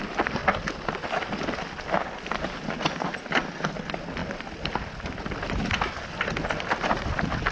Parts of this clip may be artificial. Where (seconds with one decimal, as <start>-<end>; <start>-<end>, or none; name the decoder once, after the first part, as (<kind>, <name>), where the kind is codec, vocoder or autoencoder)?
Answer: none